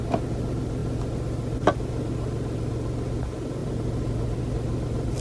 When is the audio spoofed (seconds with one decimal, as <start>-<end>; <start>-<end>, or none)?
none